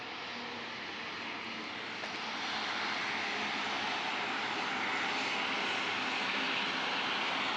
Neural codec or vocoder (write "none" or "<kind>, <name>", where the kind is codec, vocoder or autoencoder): none